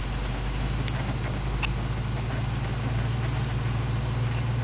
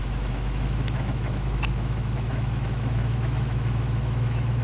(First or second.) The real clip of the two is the first